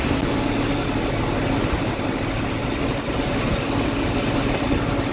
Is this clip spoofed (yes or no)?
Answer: no